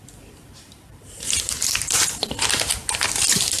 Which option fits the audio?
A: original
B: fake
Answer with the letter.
B